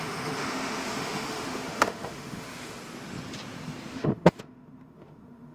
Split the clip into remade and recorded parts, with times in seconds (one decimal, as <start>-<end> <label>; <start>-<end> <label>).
0.0-2.8 remade; 2.8-3.9 recorded; 3.9-5.5 remade